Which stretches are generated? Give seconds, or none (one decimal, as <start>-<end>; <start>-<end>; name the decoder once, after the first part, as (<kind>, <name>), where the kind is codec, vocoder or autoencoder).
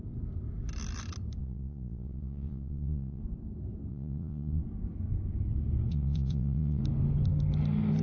1.4-3.2 (vocoder, Vocos); 3.9-4.6; 5.9-6.8